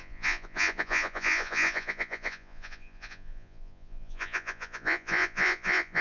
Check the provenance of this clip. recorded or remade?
remade